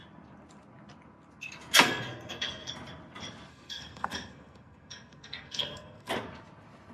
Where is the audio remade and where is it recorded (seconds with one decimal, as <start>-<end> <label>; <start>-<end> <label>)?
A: 0.0-1.8 recorded; 1.8-2.7 remade; 2.7-3.5 recorded; 3.5-6.1 remade; 6.1-6.9 recorded